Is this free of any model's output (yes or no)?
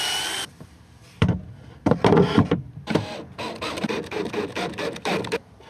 no